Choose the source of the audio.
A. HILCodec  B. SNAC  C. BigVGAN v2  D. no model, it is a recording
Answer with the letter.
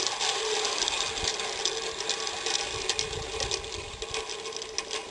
D